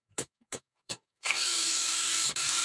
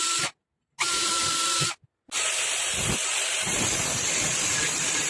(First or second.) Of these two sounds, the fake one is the first